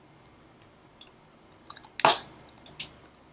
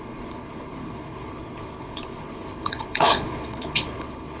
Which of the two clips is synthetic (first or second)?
second